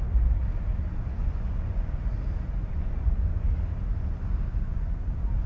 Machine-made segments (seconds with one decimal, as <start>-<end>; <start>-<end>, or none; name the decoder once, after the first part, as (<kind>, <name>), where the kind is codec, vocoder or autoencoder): 1.2-2.0 (vocoder, Vocos); 2.7-3.5; 4.5-5.1